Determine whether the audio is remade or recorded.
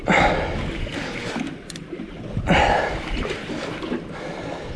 recorded